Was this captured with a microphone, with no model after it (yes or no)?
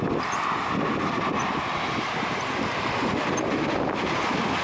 yes